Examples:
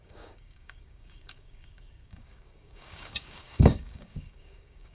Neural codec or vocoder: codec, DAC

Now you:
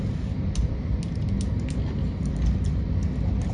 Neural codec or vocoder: none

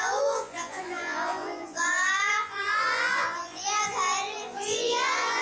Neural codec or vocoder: vocoder, Vocos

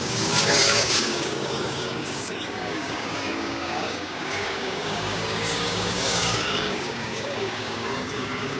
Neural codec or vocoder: codec, DAC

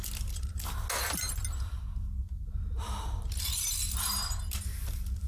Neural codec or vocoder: none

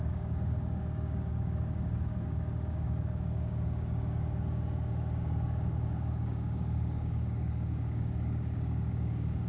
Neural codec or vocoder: codec, DAC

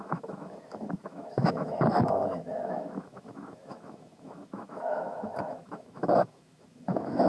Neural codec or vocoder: autoencoder, DAC-VAE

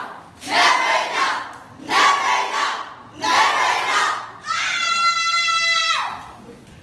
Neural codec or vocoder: none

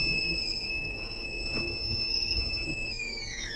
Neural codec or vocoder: codec, SNAC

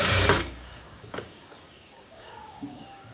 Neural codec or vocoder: codec, DAC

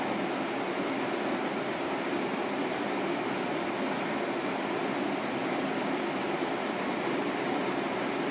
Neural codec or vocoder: none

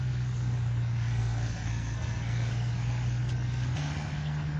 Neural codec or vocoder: codec, SNAC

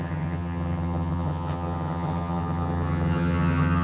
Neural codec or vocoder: vocoder, HiFi-GAN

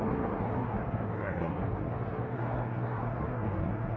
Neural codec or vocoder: codec, SNAC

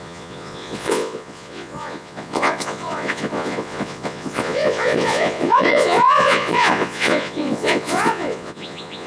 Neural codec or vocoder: vocoder, Vocos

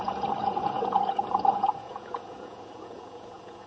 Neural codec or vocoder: vocoder, Vocos